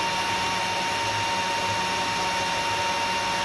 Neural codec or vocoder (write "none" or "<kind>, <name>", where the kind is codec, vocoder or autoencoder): none